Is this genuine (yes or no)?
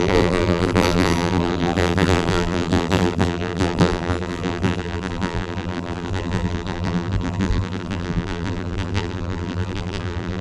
no